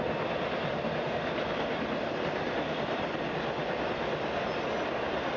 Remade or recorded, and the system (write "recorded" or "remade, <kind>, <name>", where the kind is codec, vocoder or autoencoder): recorded